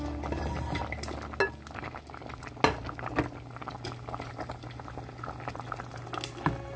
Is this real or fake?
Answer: real